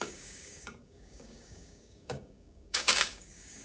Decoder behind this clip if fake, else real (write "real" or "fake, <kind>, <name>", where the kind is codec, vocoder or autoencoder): fake, codec, DAC